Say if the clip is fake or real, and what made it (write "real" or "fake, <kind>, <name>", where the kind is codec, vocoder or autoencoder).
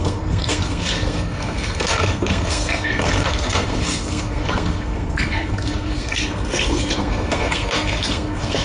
fake, codec, SNAC